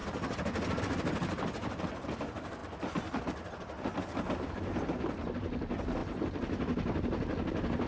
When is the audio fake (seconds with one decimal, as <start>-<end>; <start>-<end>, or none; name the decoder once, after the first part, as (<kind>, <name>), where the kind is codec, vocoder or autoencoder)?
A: none

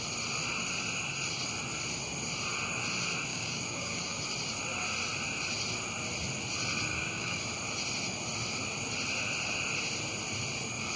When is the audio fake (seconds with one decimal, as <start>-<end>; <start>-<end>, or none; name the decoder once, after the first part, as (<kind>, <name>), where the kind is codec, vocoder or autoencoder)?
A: 3.3-4.2 (codec, DAC); 6.9-7.4